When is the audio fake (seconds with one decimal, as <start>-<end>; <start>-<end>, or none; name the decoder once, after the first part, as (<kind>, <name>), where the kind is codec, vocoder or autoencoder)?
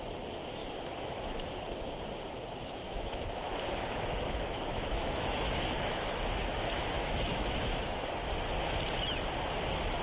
0.6-1.6 (autoencoder, DAC-VAE); 2.8-8.0